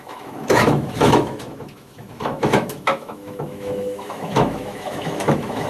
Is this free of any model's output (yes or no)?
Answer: no